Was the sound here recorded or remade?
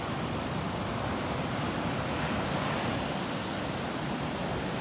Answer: recorded